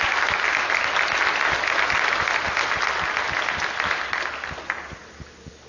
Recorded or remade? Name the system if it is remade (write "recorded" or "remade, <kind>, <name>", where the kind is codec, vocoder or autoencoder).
recorded